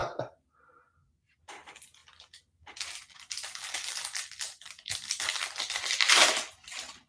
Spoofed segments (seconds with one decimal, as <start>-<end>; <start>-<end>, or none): none